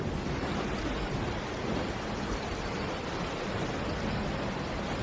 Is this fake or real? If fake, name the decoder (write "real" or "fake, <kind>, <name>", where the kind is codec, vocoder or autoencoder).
real